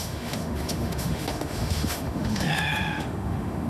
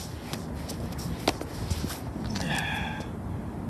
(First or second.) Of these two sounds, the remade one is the first